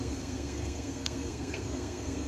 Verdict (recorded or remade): remade